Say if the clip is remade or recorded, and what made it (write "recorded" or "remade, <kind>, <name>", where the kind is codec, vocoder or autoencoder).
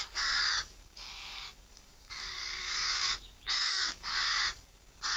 remade, codec, DAC